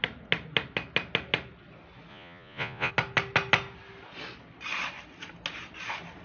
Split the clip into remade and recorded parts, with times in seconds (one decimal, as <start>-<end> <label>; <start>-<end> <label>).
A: 0.0-2.1 recorded; 2.1-2.9 remade; 2.9-6.2 recorded